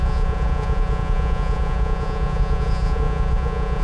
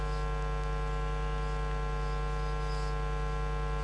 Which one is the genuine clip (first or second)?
second